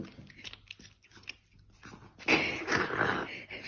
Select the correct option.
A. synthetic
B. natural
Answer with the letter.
B